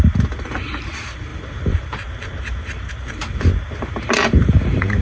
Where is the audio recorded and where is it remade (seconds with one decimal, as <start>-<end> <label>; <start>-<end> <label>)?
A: 0.0-5.0 remade